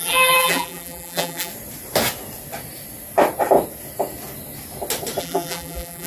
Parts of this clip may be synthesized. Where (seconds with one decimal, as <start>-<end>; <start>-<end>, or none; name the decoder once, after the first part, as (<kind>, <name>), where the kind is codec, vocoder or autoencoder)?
0.0-1.5 (vocoder, BigVGAN v2); 5.2-6.1